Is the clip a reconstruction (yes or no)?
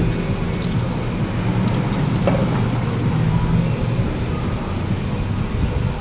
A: no